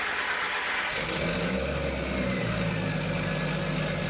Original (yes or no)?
yes